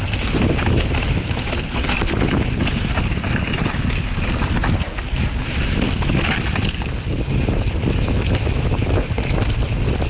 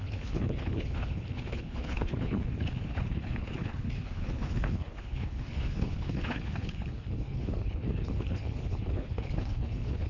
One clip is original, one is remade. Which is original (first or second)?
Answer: first